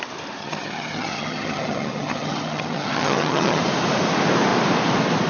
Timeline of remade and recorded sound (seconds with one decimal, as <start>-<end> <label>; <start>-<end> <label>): 0.0-0.4 recorded; 0.4-3.6 remade; 3.6-5.3 recorded